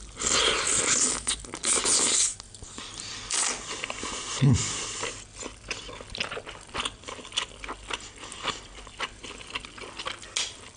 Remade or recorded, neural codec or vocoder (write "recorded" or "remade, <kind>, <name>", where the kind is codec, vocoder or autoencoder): recorded